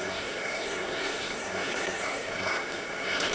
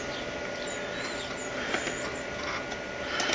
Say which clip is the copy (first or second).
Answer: first